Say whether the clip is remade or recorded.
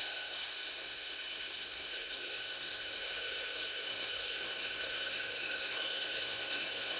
remade